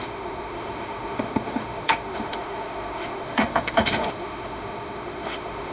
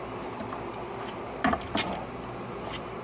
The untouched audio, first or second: second